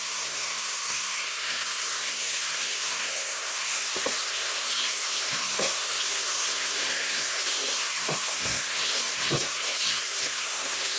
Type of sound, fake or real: fake